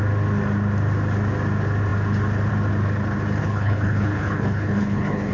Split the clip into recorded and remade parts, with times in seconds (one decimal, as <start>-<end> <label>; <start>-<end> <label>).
0.0-3.4 recorded; 3.4-5.3 remade